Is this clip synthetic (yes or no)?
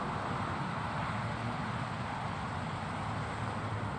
no